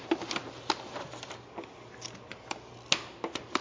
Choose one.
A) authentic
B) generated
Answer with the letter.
A